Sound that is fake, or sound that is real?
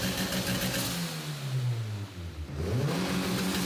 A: real